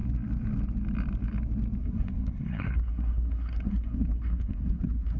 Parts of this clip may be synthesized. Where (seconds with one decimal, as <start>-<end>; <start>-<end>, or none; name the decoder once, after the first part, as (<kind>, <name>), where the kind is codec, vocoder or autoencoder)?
1.8-5.2 (codec, SNAC)